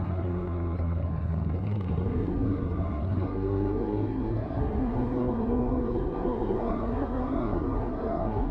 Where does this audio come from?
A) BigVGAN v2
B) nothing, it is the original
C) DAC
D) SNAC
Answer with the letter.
D